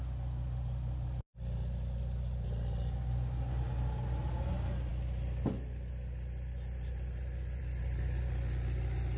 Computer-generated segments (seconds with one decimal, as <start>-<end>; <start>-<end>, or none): none